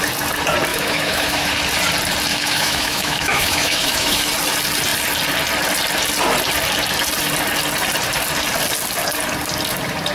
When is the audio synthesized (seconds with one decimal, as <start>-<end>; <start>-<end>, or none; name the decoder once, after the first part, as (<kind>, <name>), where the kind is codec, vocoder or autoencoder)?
0.7-1.5 (autoencoder, DAC-VAE); 2.3-4.3